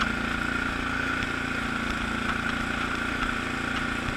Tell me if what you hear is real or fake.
real